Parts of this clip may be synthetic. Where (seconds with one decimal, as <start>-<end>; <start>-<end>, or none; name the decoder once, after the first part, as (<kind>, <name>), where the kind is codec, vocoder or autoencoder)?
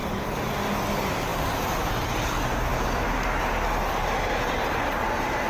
0.0-0.5 (vocoder, BigVGAN v2)